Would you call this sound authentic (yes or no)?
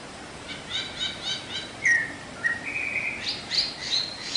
yes